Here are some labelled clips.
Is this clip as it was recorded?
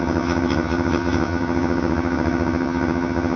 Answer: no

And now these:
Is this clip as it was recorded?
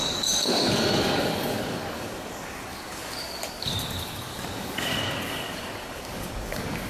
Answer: no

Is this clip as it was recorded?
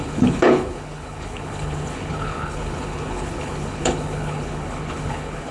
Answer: no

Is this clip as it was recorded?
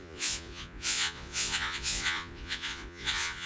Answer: no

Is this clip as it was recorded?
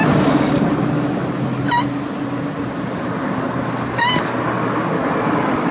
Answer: yes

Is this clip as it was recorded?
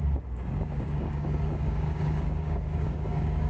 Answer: no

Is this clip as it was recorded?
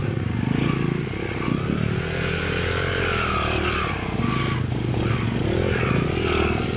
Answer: yes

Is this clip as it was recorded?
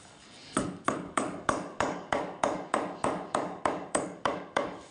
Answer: no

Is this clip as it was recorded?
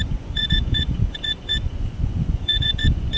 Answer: no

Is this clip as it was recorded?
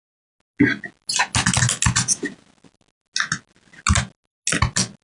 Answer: yes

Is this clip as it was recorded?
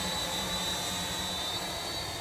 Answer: no